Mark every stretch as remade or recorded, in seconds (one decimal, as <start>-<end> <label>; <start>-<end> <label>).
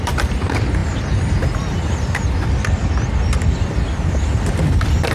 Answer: 0.0-5.1 recorded